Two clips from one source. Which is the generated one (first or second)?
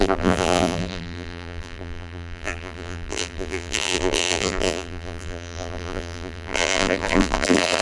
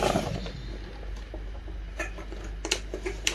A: first